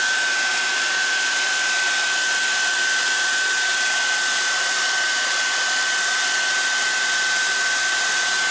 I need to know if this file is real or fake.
real